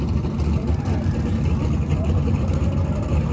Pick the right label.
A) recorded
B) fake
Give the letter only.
A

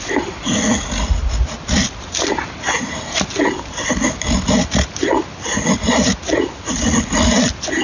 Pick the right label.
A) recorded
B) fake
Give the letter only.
A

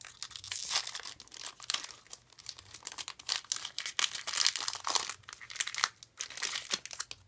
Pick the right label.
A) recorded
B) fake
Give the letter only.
A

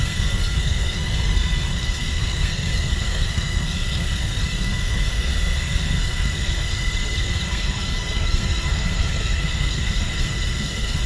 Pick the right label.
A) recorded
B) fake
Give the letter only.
B